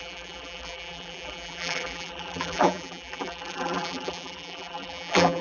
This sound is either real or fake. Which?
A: fake